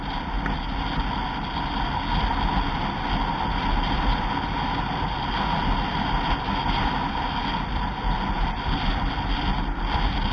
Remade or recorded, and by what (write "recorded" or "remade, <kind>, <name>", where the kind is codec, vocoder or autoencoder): recorded